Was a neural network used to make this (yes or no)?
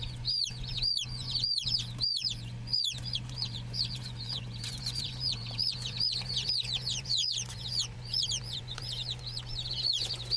yes